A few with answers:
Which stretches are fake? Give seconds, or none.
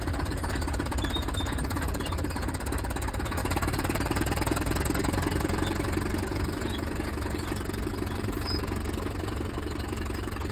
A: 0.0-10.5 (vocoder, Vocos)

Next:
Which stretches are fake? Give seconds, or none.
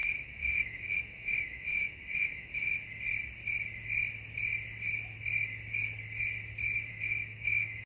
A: 0.0-2.7 (autoencoder, DAC-VAE); 6.9-7.9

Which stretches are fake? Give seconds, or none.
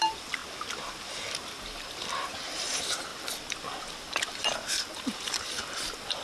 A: 0.0-0.4 (vocoder, BigVGAN v2); 1.8-6.2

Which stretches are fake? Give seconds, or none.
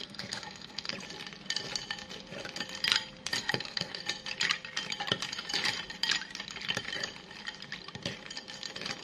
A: 0.0-0.9 (codec, SNAC); 3.4-4.0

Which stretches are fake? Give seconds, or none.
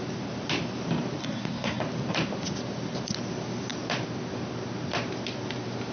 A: 1.2-1.8 (codec, SNAC)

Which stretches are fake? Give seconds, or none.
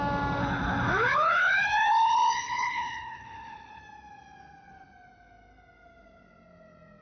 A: 0.4-3.8 (codec, HILCodec)